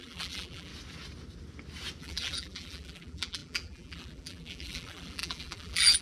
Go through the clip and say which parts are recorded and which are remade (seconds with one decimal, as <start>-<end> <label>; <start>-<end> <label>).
0.0-0.7 remade; 0.7-2.0 recorded; 2.0-6.0 remade